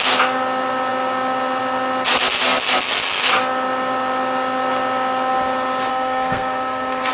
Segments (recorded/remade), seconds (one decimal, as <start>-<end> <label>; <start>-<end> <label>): 0.0-5.9 recorded; 5.9-7.1 remade